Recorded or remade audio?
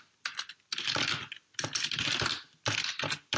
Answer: recorded